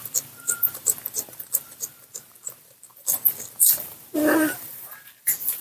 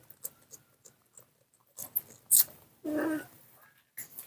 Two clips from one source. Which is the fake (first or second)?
first